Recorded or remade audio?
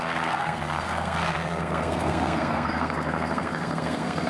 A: remade